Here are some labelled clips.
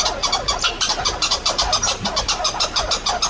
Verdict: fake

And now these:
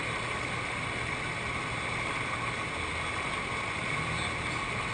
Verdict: real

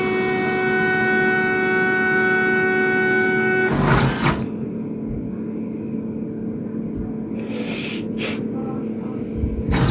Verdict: real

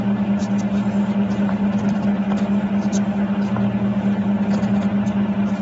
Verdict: real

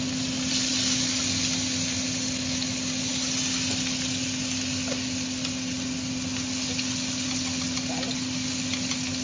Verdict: real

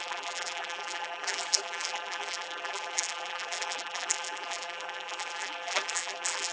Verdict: fake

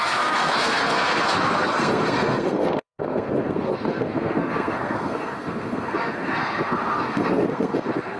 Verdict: fake